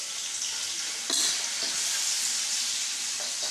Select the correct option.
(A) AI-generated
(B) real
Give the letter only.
B